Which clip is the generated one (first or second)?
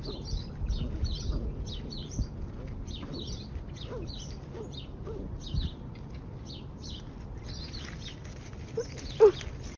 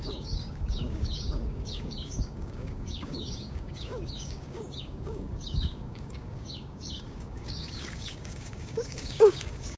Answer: second